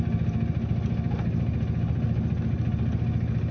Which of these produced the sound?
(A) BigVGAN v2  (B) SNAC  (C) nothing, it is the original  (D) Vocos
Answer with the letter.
C